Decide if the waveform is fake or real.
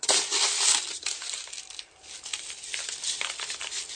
real